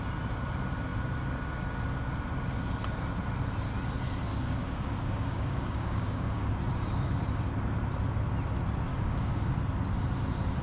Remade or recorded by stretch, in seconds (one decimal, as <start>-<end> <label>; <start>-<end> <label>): 0.0-4.3 recorded; 4.3-6.5 remade; 6.5-8.9 recorded; 8.9-9.5 remade; 9.5-10.6 recorded